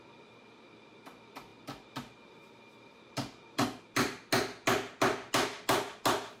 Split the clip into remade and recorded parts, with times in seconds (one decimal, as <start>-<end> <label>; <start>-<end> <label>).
0.0-6.4 recorded